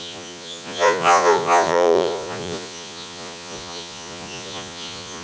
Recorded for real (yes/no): no